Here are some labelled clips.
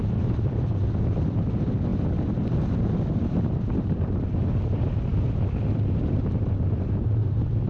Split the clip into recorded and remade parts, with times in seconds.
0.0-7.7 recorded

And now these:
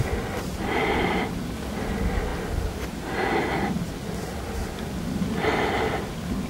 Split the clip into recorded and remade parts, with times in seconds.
0.0-6.5 recorded

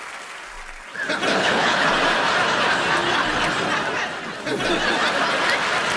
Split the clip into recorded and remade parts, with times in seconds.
0.0-1.3 recorded; 1.3-1.9 remade; 1.9-6.0 recorded

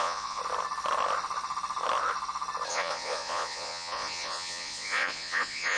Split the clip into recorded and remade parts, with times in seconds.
0.0-0.4 remade; 0.4-2.7 recorded; 2.7-5.8 remade

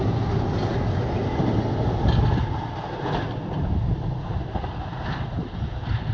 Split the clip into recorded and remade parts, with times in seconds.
0.0-6.1 recorded

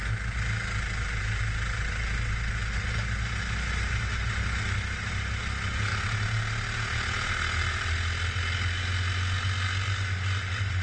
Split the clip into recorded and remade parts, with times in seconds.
0.0-10.8 recorded

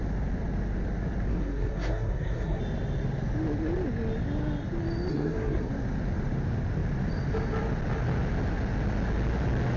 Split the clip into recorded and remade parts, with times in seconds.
0.0-1.3 recorded; 1.3-2.6 remade; 2.6-5.1 recorded; 5.1-5.7 remade; 5.7-9.8 recorded

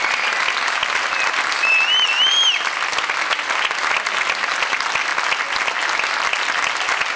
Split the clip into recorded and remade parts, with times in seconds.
0.0-7.2 recorded